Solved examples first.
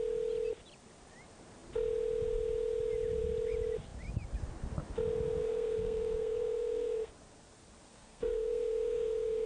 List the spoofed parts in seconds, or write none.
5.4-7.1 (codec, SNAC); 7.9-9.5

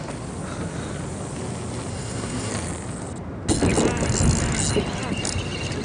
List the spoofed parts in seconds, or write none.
1.9-2.5 (codec, SNAC)

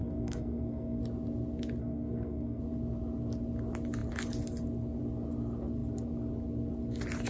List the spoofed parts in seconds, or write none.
0.0-1.0 (codec, SNAC); 1.8-2.6